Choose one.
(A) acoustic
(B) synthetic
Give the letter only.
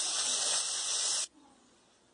B